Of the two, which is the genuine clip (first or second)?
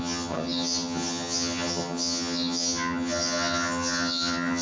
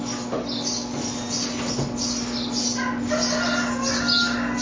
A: second